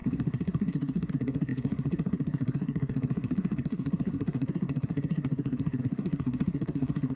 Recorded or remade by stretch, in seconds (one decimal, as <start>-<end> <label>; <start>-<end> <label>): 0.0-7.2 remade